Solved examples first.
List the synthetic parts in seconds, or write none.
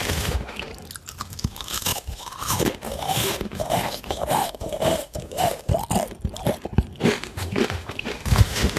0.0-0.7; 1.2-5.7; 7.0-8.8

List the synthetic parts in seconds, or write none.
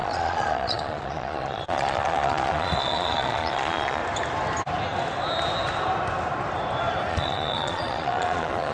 0.0-4.0; 7.1-8.7